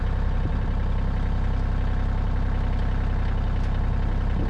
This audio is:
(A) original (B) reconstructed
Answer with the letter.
A